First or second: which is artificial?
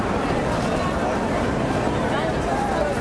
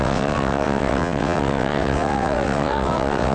second